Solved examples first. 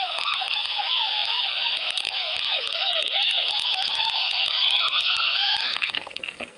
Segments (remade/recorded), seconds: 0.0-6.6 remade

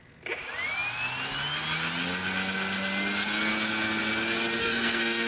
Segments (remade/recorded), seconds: 0.0-4.6 recorded; 4.6-5.3 remade

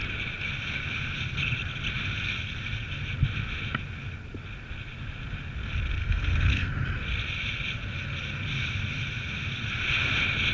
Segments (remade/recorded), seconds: 0.0-6.0 recorded; 6.0-6.7 remade; 6.7-10.5 recorded

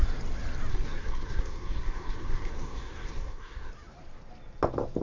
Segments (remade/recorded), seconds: 0.0-0.7 recorded; 0.7-3.7 remade; 3.7-5.0 recorded

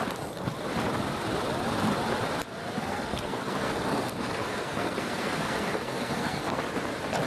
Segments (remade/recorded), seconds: 0.0-2.8 recorded; 2.8-6.6 remade; 6.6-7.3 recorded